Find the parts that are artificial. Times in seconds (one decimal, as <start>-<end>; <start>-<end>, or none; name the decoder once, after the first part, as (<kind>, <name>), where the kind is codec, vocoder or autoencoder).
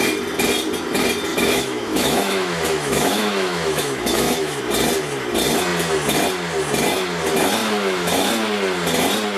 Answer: 1.3-4.6 (autoencoder, DAC-VAE); 7.6-8.3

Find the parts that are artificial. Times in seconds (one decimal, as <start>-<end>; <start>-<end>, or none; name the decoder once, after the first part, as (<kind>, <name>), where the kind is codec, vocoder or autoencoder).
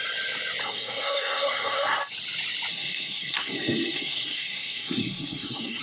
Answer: 0.6-2.0 (codec, SNAC); 2.7-5.8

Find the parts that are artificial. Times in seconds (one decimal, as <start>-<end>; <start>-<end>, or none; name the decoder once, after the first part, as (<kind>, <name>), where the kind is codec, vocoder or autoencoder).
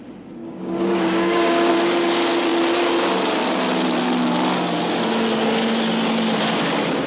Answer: 0.4-1.7 (codec, DAC)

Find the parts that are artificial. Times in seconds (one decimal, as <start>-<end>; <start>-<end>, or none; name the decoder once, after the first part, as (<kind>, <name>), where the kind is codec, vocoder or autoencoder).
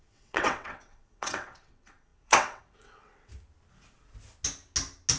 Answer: 0.0-3.3 (vocoder, WaveNeXt)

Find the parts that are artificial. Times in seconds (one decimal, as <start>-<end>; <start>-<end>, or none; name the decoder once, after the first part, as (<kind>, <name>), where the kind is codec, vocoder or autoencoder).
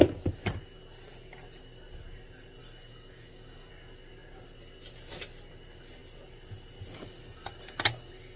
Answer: 2.6-3.7 (autoencoder, DAC-VAE)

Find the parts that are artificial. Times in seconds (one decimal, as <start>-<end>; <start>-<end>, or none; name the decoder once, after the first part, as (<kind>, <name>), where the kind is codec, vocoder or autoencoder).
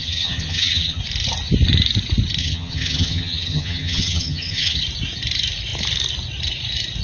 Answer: 0.0-1.0 (vocoder, HiFi-GAN); 2.4-4.8